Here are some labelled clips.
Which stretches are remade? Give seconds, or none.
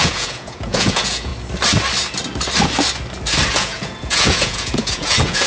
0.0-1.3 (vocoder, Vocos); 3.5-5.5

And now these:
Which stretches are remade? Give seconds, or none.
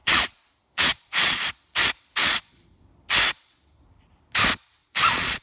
0.0-1.4 (vocoder, Vocos); 2.2-2.8; 4.8-5.4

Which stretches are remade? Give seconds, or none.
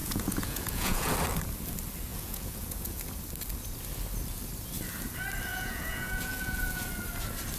0.0-1.1 (vocoder, Vocos); 2.1-3.0; 5.5-6.9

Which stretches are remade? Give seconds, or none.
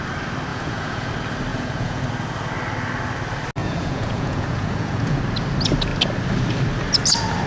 0.5-1.1 (vocoder, Vocos); 1.5-2.0; 3.6-5.2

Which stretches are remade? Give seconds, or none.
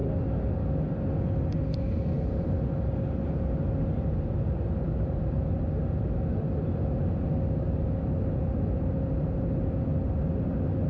none